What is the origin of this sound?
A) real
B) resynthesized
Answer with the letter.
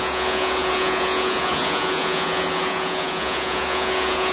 B